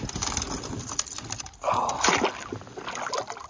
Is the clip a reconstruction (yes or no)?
no